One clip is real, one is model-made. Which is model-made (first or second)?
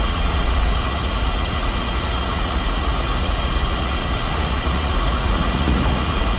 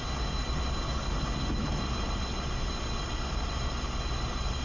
first